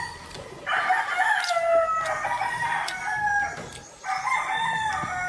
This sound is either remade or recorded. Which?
recorded